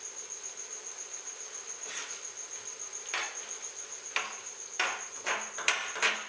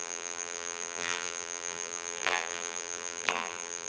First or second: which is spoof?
second